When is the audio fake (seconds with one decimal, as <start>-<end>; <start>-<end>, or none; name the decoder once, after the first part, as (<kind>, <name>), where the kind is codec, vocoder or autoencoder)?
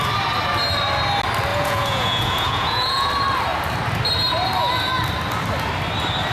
1.5-3.1 (vocoder, Vocos)